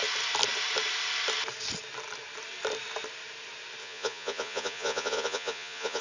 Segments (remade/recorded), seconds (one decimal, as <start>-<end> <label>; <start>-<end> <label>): 0.0-3.8 recorded; 3.8-6.0 remade